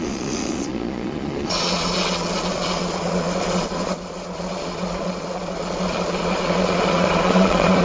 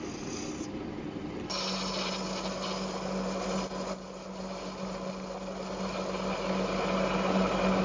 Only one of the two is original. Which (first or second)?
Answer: second